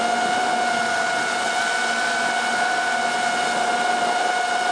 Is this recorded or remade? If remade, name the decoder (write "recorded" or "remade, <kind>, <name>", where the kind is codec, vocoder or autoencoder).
recorded